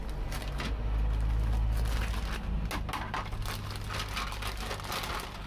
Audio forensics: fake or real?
real